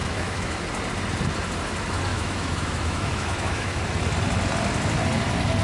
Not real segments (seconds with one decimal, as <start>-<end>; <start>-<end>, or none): 0.0-0.6; 2.1-3.8